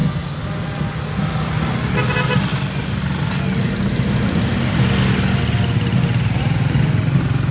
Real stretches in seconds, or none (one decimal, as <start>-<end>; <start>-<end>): 0.0-7.5